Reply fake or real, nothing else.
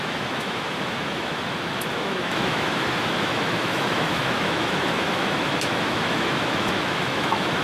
fake